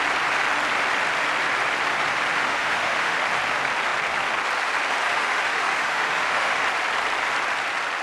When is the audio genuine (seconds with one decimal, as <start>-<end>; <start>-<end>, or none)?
0.0-2.4; 3.2-5.1; 6.6-8.0